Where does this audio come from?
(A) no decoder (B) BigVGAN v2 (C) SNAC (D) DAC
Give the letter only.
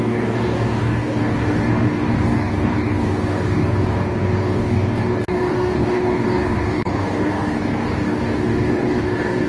D